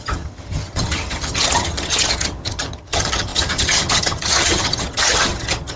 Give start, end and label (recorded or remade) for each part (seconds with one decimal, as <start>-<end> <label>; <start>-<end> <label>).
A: 0.0-5.8 remade